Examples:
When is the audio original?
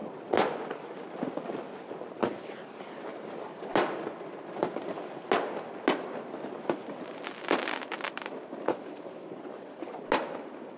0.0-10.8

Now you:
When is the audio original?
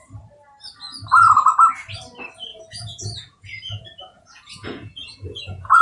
0.0-2.5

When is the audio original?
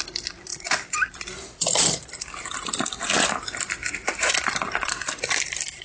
0.0-0.5; 3.9-5.8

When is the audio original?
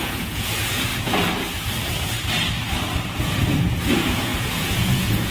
0.9-3.8